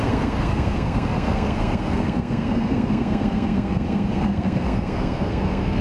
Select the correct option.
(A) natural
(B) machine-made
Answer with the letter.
B